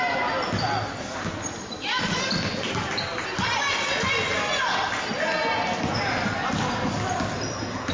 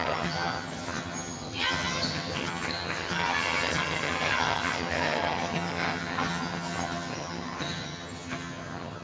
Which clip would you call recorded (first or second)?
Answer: first